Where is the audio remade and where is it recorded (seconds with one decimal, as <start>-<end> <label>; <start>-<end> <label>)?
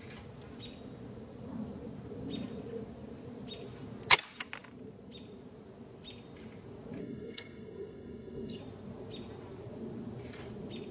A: 0.0-7.0 recorded; 7.0-8.6 remade; 8.6-10.9 recorded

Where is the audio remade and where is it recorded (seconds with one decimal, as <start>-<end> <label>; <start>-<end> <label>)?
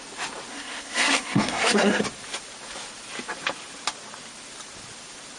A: 0.0-0.5 recorded; 0.5-2.0 remade; 2.0-5.4 recorded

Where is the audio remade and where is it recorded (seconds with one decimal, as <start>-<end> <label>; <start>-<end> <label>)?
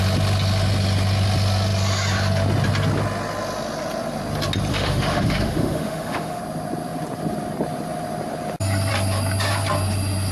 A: 0.0-4.7 recorded; 4.7-6.4 remade; 6.4-10.3 recorded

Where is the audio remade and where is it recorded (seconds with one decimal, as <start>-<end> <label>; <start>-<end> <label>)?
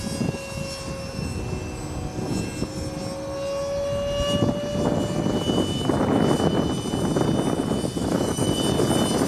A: 0.0-8.0 recorded; 8.0-8.6 remade; 8.6-9.3 recorded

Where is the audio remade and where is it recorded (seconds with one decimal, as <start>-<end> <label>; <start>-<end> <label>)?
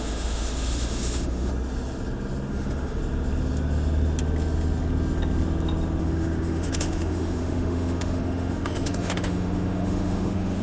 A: 0.0-1.5 remade; 1.5-2.5 recorded; 2.5-3.0 remade; 3.0-6.0 recorded; 6.0-10.6 remade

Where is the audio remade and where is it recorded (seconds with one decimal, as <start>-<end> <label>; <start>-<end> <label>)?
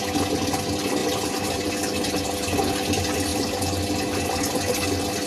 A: 0.0-1.0 recorded; 1.0-1.7 remade; 1.7-3.3 recorded; 3.3-4.4 remade; 4.4-5.3 recorded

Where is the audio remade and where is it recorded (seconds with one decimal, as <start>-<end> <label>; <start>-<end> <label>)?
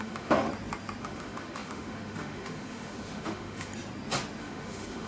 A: 0.0-0.5 remade; 0.5-1.0 recorded; 1.0-3.7 remade; 3.7-4.4 recorded; 4.4-5.1 remade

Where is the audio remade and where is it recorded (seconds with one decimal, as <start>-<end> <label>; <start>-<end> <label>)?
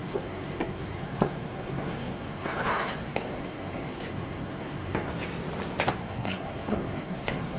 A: 0.0-5.1 remade; 5.1-5.9 recorded; 5.9-7.6 remade